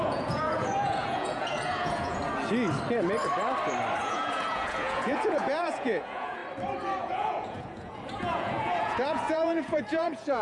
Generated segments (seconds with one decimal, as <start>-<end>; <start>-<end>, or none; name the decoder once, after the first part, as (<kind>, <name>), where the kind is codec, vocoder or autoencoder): 0.0-2.2 (vocoder, Vocos); 4.0-6.4; 7.0-10.4